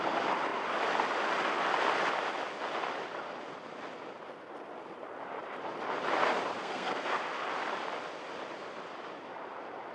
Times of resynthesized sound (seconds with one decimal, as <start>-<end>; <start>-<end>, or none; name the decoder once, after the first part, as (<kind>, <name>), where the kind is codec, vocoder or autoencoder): 6.6-7.2 (codec, SNAC)